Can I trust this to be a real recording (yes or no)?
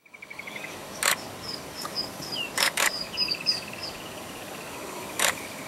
no